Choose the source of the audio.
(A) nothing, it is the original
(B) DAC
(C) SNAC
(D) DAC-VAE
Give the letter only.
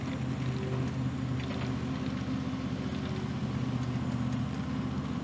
A